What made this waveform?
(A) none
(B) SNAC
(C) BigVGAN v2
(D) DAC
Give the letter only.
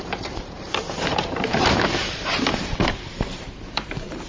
C